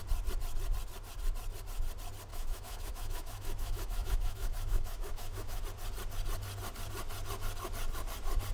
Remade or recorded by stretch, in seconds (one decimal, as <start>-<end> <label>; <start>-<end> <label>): 0.0-2.3 recorded; 2.3-5.6 remade; 5.6-8.5 recorded